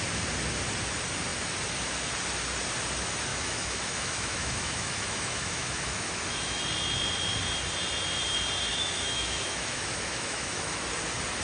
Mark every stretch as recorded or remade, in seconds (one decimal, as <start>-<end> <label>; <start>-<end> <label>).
0.0-3.3 recorded; 3.3-6.6 remade; 6.6-8.7 recorded; 8.7-10.8 remade; 10.8-11.4 recorded